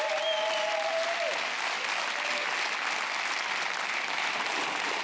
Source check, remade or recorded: recorded